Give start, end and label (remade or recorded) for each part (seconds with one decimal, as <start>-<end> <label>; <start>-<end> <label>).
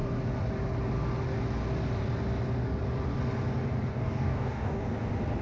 0.0-3.9 recorded; 3.9-4.9 remade; 4.9-5.4 recorded